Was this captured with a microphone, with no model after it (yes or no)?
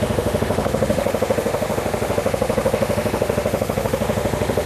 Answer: no